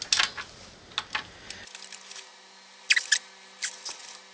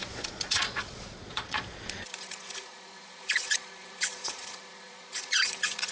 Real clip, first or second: first